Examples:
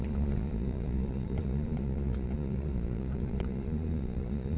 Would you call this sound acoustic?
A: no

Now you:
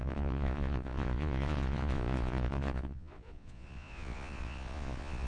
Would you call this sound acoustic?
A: no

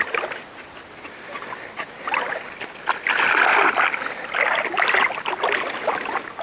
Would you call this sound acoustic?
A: yes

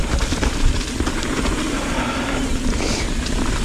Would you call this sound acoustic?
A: yes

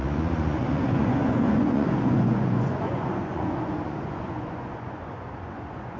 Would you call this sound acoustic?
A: no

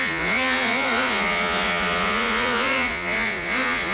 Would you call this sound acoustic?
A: no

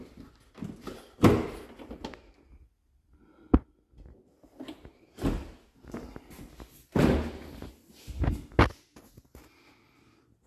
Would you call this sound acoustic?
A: yes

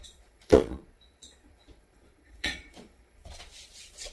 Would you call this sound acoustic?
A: no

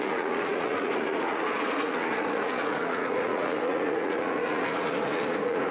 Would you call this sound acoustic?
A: no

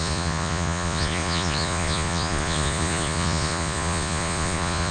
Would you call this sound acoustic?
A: no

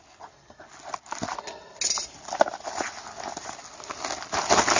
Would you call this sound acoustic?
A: yes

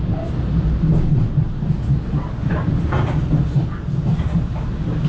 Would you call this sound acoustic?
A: yes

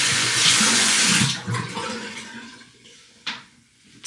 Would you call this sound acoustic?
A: no